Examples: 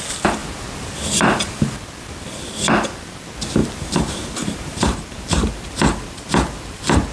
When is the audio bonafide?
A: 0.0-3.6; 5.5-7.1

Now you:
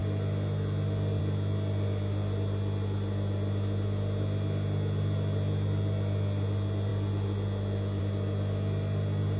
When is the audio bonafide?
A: 0.0-9.4

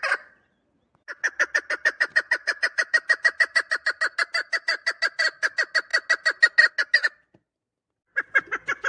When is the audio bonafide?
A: 0.0-2.4; 4.0-8.9

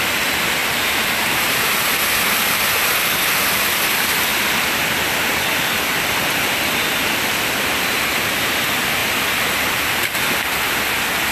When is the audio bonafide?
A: 0.0-0.6; 1.9-9.0; 10.7-11.3

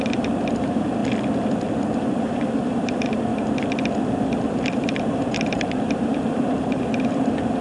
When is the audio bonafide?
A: 1.0-1.8; 3.3-4.7

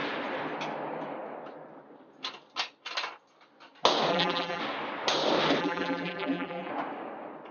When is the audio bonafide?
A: 0.0-4.1; 4.6-5.6; 6.7-7.5

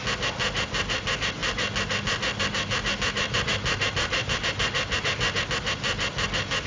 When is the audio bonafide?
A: 0.0-6.7

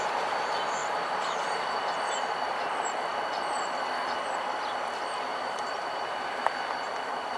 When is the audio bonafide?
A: 0.0-0.8; 1.9-5.3; 6.5-7.4